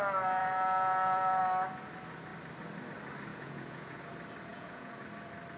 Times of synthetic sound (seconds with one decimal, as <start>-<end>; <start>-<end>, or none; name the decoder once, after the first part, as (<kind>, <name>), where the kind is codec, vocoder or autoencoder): 0.4-1.4 (vocoder, Vocos); 3.3-4.0; 4.5-5.0